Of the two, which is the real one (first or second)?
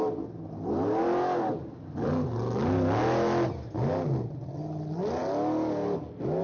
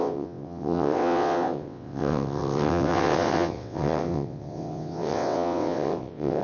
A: first